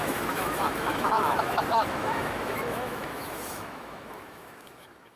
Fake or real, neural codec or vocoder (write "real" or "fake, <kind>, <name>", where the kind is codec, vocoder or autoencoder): fake, autoencoder, DAC-VAE